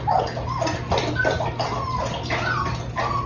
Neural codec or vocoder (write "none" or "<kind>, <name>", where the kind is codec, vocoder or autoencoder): none